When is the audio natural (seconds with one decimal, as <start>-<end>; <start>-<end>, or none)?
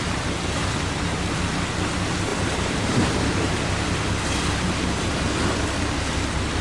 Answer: 0.0-2.3; 3.5-6.6